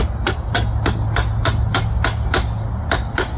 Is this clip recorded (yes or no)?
yes